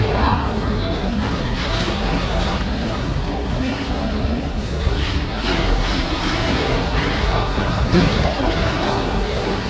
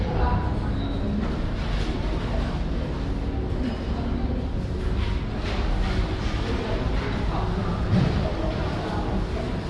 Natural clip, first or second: second